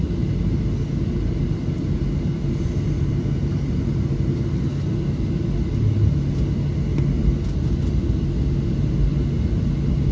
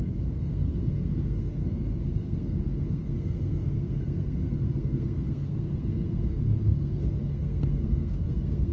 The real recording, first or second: first